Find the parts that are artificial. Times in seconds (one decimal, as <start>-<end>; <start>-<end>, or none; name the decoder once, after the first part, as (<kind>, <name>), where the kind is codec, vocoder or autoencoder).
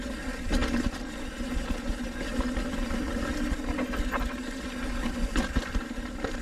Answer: none